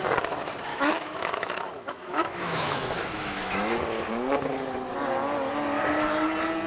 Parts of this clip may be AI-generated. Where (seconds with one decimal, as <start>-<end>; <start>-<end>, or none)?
0.7-3.8